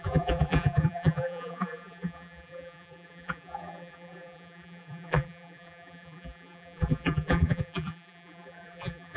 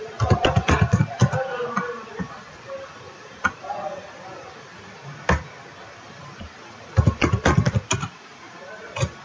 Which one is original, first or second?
second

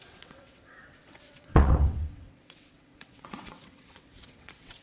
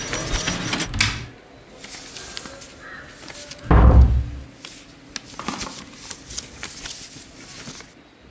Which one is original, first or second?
second